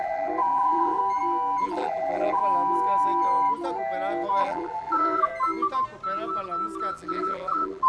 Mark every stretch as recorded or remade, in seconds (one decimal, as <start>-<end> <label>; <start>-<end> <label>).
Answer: 0.0-1.0 remade; 1.0-1.6 recorded; 1.6-2.4 remade; 2.4-4.4 recorded; 4.4-5.3 remade; 5.3-6.9 recorded; 6.9-7.9 remade